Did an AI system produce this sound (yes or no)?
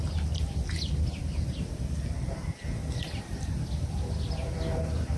no